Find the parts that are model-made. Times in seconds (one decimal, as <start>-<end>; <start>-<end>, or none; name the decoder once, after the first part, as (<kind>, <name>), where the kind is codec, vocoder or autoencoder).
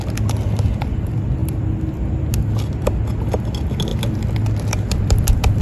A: 1.4-1.9 (vocoder, BigVGAN v2); 3.9-5.6